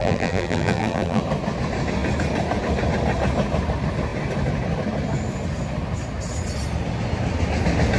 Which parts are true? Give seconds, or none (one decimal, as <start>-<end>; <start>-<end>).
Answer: 1.2-8.0